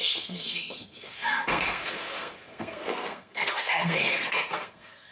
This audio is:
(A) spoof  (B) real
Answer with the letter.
A